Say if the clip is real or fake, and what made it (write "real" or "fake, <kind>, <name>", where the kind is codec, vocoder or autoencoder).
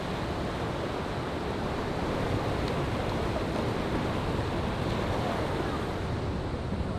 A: real